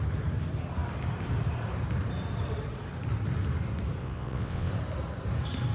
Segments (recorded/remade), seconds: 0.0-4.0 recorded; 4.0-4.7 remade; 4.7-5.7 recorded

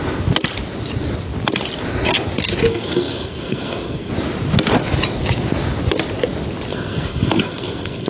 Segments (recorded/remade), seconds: 0.0-2.7 recorded; 2.7-4.1 remade; 4.1-6.7 recorded; 6.7-8.1 remade

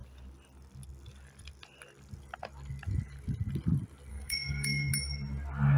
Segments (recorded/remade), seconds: 0.0-4.1 recorded; 4.1-4.9 remade; 4.9-5.8 recorded

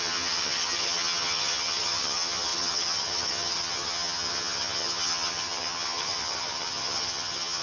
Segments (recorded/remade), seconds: 0.0-7.6 remade

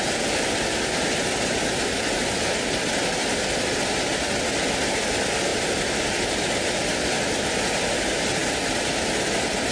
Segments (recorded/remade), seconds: 0.0-0.8 remade; 0.8-5.5 recorded; 5.5-7.9 remade; 7.9-9.7 recorded